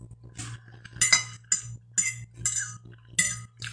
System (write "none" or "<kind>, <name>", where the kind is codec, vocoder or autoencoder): none